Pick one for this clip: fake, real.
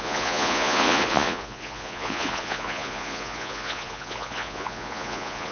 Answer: fake